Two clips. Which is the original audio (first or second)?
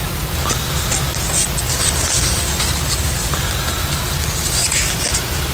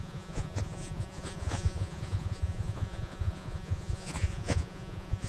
first